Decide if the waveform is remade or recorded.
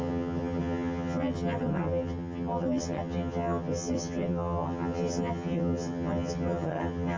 remade